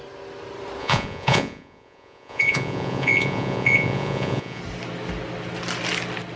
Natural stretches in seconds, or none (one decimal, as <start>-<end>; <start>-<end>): 0.0-0.8; 4.6-6.4